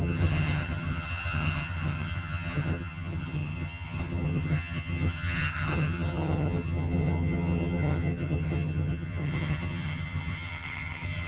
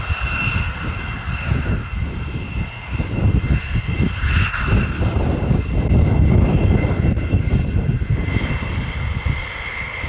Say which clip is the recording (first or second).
second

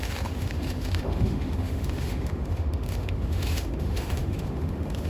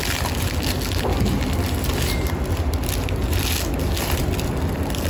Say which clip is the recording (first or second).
second